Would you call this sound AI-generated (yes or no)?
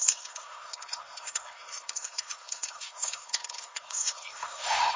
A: yes